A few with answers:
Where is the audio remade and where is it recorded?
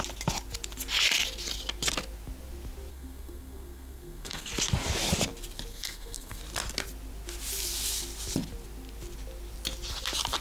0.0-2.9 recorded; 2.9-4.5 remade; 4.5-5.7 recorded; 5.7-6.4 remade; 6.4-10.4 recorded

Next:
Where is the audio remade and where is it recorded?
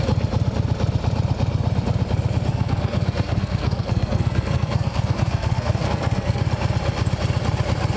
0.0-2.5 recorded; 2.5-6.4 remade; 6.4-8.0 recorded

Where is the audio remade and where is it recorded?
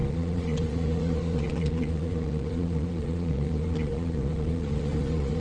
0.0-5.4 remade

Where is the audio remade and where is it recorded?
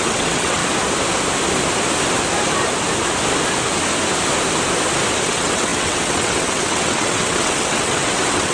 0.0-0.6 remade; 0.6-5.2 recorded; 5.2-8.5 remade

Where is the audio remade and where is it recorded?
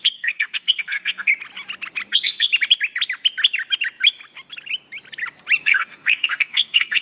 0.0-1.3 remade; 1.3-2.1 recorded; 2.1-2.5 remade; 2.5-5.6 recorded; 5.6-7.0 remade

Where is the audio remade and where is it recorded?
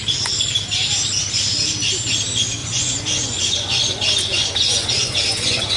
0.0-2.6 recorded; 2.6-5.8 remade